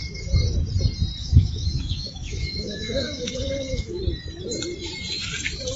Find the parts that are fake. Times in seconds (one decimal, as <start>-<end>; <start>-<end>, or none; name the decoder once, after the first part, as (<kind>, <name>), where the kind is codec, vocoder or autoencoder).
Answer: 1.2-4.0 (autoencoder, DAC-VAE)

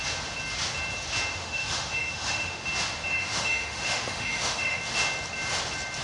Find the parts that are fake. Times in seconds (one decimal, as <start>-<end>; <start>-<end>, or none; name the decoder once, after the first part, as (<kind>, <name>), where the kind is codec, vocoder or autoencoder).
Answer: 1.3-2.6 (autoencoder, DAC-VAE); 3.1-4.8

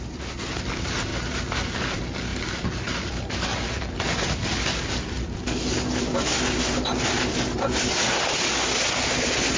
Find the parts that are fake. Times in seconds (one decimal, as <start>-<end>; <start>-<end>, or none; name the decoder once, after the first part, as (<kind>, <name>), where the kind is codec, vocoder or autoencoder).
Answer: none

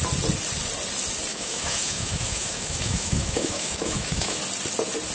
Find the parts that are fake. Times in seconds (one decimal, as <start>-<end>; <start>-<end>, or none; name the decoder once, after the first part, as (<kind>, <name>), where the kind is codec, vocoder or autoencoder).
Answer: 1.3-4.4 (autoencoder, DAC-VAE)

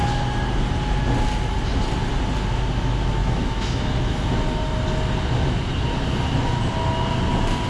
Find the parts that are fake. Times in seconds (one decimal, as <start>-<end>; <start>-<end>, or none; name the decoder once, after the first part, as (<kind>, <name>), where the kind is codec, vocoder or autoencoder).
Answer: 3.2-4.1 (autoencoder, DAC-VAE)

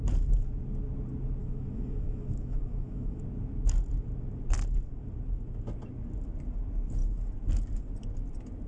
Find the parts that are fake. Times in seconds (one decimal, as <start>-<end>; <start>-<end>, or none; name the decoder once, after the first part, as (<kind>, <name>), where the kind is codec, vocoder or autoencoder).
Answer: 1.4-3.2 (autoencoder, DAC-VAE)